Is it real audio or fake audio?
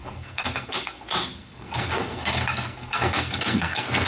fake